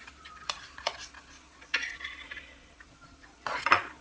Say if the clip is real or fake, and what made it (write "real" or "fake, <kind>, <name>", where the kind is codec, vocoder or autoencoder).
fake, vocoder, Vocos